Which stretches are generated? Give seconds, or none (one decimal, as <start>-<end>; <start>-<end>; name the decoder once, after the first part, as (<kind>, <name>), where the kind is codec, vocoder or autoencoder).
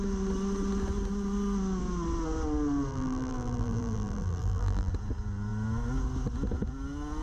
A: 2.9-4.9 (vocoder, BigVGAN v2)